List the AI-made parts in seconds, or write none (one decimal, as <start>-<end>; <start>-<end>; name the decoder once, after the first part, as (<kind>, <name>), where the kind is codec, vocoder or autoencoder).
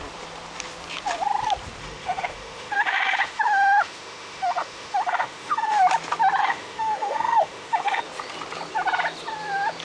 1.8-5.8 (autoencoder, DAC-VAE); 6.4-8.0